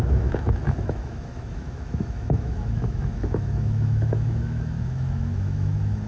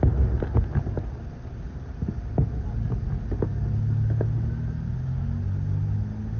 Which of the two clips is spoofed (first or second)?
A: first